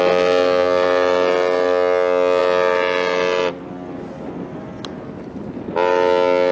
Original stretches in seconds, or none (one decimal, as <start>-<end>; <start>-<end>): 0.0-6.5